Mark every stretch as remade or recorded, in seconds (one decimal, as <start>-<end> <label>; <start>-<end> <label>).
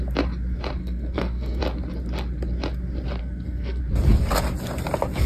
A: 0.0-0.8 recorded; 0.8-1.6 remade; 1.6-3.2 recorded; 3.2-3.8 remade; 3.8-5.3 recorded